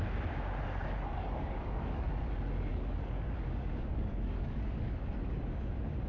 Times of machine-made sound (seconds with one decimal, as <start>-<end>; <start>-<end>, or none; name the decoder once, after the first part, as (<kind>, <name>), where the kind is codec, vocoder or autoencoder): 0.8-2.1 (codec, DAC); 2.7-5.0